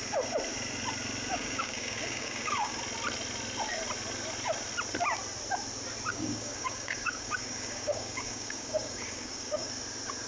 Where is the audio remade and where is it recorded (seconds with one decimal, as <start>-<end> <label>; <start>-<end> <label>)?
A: 0.0-1.3 recorded; 1.3-2.8 remade; 2.8-6.1 recorded; 6.1-9.7 remade; 9.7-10.3 recorded

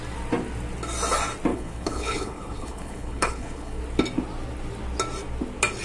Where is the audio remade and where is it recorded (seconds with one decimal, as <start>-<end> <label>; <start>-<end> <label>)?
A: 0.0-1.5 recorded; 1.5-3.8 remade; 3.8-5.8 recorded

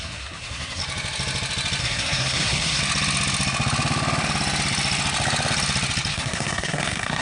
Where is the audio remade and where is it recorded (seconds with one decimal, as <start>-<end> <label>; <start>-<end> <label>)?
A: 0.0-0.8 remade; 0.8-1.8 recorded; 1.8-2.8 remade; 2.8-6.1 recorded; 6.1-7.2 remade

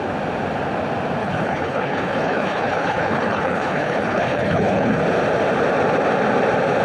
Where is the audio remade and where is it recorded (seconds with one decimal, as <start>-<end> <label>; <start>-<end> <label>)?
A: 0.0-1.2 recorded; 1.2-5.0 remade; 5.0-6.8 recorded

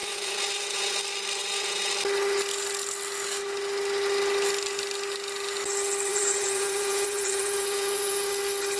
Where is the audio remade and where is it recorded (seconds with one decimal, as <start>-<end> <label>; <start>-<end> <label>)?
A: 0.0-1.0 remade; 1.0-1.4 recorded; 1.4-1.9 remade; 1.9-6.1 recorded; 6.1-8.3 remade; 8.3-8.8 recorded

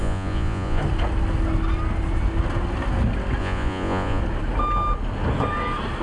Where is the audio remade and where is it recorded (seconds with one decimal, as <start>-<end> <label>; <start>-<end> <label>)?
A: 0.0-0.8 remade; 0.8-3.4 recorded; 3.4-4.2 remade; 4.2-6.0 recorded

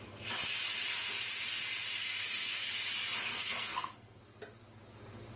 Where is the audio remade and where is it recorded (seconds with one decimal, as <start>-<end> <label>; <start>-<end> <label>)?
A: 0.0-2.0 recorded; 2.0-2.7 remade; 2.7-3.2 recorded; 3.2-4.2 remade; 4.2-5.4 recorded

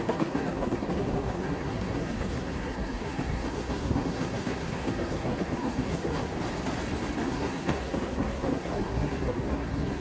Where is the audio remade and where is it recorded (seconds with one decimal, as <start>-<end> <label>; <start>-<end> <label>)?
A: 0.0-6.3 remade; 6.3-7.2 recorded; 7.2-10.0 remade